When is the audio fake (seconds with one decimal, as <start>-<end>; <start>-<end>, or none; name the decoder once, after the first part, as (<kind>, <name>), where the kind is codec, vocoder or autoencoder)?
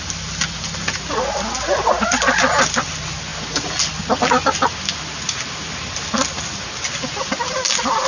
none